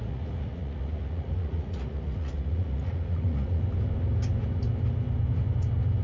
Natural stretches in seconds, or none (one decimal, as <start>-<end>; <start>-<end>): 3.6-6.0